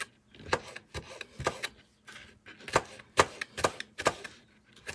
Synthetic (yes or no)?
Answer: no